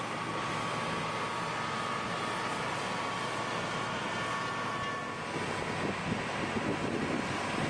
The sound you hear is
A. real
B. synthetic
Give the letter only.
A